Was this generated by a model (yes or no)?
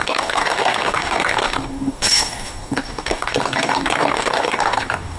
yes